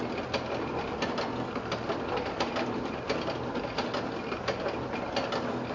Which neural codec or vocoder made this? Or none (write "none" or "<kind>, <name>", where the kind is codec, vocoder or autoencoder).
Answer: none